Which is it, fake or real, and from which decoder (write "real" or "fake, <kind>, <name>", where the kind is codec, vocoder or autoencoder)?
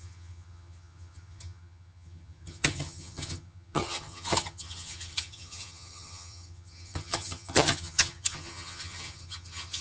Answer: fake, vocoder, HiFi-GAN